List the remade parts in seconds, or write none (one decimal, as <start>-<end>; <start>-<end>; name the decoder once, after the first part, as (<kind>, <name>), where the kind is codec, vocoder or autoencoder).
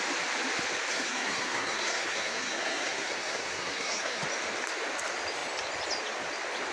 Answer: 0.9-4.2 (codec, SNAC)